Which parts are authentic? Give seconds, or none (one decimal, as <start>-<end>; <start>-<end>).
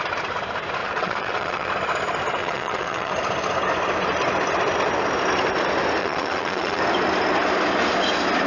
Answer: 0.0-0.8; 1.7-2.4; 3.1-6.0; 6.8-8.5